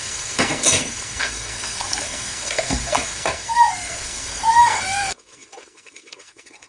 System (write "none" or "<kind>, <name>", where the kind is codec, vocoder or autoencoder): codec, SNAC